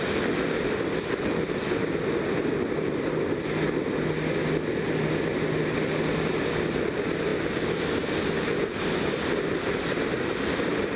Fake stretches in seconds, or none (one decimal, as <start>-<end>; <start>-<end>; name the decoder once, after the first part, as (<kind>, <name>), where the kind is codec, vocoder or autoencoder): none